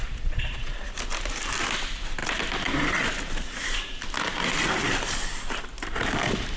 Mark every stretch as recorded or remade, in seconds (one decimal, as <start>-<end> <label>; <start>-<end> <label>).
0.0-0.9 remade; 0.9-6.6 recorded